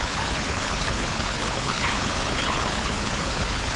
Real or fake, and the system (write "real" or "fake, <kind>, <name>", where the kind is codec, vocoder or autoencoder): fake, codec, HILCodec